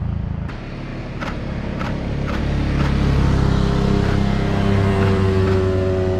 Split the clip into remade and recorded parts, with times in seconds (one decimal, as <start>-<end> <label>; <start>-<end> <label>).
0.0-0.9 recorded; 0.9-2.4 remade; 2.4-6.2 recorded